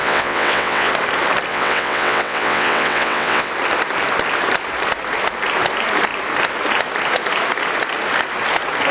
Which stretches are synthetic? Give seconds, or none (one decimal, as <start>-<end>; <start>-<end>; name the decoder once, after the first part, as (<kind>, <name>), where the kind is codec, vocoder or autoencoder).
0.0-0.9 (vocoder, WaveNeXt); 1.5-3.5